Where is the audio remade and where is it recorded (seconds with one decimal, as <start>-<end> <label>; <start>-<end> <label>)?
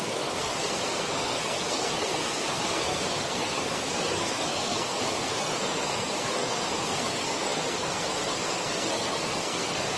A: 0.0-10.0 remade